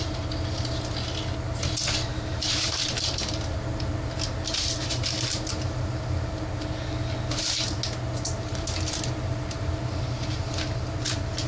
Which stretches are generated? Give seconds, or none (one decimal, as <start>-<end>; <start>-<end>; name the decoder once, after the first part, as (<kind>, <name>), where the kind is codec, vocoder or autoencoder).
2.1-3.4 (vocoder, BigVGAN v2)